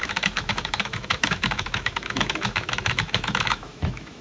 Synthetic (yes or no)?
yes